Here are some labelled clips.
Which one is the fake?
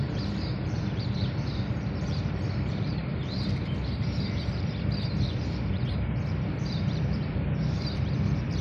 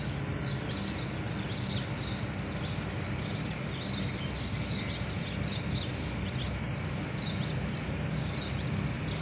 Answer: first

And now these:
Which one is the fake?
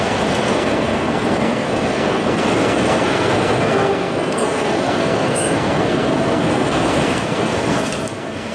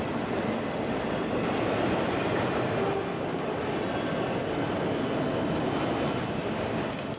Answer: first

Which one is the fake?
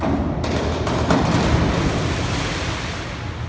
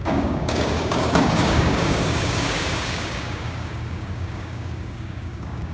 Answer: second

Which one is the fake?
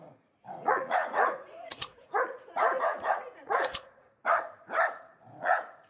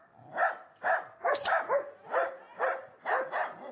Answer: first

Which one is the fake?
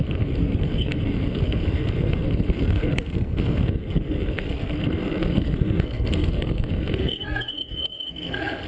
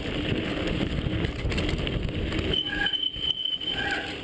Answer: first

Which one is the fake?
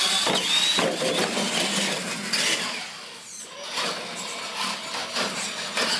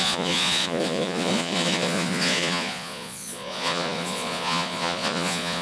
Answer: second